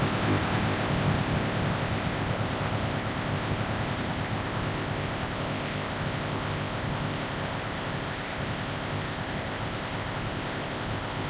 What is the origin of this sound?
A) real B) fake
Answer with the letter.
B